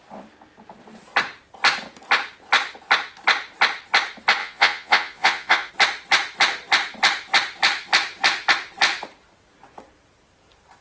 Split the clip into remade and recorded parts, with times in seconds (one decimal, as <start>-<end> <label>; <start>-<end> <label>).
0.0-4.4 recorded; 4.4-5.7 remade; 5.7-10.8 recorded